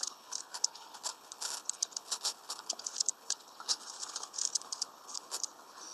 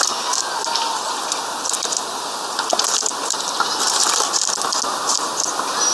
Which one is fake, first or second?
first